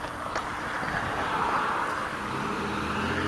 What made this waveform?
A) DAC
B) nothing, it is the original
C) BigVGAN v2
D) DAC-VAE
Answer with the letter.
B